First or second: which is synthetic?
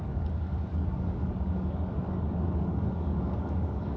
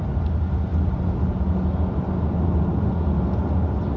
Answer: first